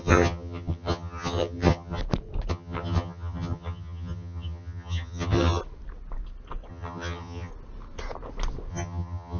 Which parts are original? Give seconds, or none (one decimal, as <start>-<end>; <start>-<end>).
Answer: 2.0-2.5; 5.6-6.7; 7.5-8.7